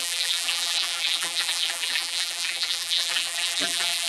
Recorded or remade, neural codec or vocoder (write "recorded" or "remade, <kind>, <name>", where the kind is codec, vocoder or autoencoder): remade, vocoder, BigVGAN v2